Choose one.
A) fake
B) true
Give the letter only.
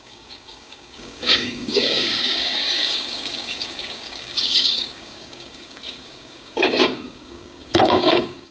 A